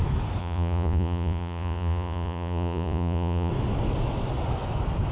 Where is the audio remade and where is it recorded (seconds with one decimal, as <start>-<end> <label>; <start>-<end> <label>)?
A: 0.0-0.4 recorded; 0.4-3.5 remade; 3.5-5.1 recorded